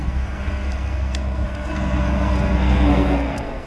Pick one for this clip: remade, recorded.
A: remade